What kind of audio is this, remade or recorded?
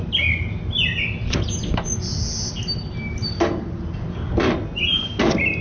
recorded